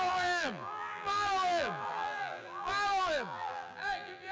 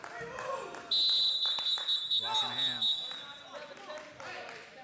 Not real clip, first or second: first